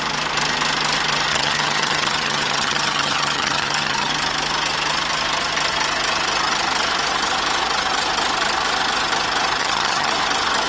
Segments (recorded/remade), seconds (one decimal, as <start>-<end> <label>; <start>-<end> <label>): 0.0-1.3 recorded; 1.3-4.1 remade; 4.1-9.6 recorded; 9.6-10.1 remade; 10.1-10.7 recorded